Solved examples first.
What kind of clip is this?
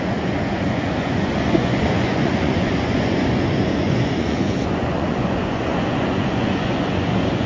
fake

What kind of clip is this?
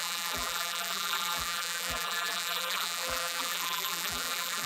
fake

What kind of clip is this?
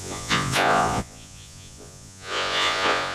fake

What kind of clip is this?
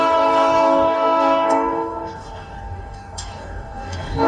fake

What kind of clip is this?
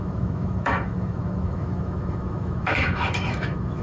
fake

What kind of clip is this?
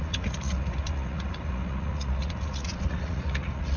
fake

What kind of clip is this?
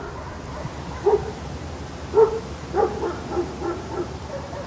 real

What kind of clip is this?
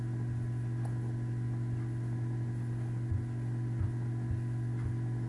real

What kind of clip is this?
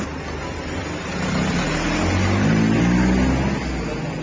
real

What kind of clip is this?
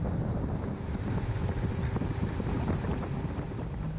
real